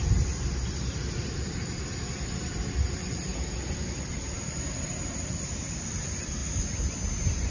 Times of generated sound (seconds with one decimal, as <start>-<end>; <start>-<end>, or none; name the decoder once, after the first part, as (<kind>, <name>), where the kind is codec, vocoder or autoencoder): 0.0-3.3 (vocoder, BigVGAN v2); 4.1-6.4